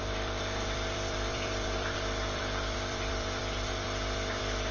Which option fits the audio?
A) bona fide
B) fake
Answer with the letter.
B